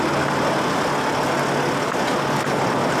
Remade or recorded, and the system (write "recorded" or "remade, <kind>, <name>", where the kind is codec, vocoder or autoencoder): recorded